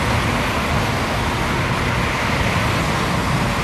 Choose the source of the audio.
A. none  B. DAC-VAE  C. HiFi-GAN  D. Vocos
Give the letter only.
A